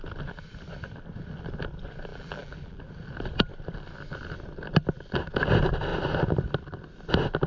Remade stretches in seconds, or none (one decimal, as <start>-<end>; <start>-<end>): 2.1-2.8